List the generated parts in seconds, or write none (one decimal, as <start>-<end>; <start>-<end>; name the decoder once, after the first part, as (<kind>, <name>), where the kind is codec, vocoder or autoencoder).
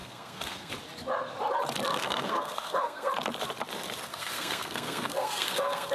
0.0-0.7 (codec, SNAC); 1.9-3.1; 4.1-5.9